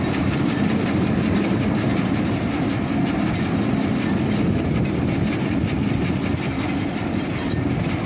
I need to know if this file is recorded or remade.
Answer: recorded